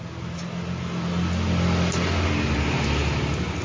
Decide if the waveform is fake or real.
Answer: real